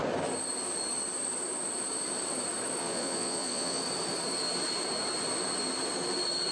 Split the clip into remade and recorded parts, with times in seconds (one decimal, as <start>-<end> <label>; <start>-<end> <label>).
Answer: 0.0-2.8 recorded; 2.8-3.8 remade; 3.8-6.5 recorded